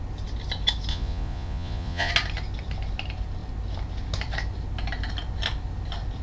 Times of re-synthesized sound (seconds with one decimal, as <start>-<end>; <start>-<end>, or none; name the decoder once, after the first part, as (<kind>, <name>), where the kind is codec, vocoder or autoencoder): 0.9-2.1 (vocoder, Vocos)